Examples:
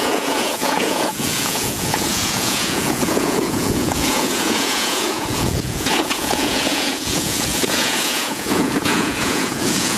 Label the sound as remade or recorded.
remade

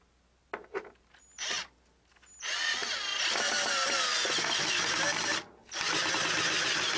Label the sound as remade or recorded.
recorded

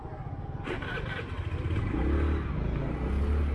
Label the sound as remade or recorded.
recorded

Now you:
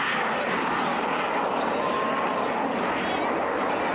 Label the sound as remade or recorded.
recorded